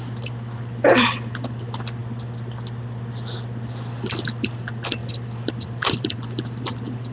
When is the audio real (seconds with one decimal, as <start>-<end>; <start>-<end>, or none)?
2.0-3.9